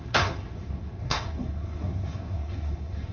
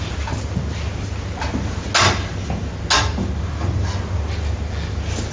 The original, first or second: second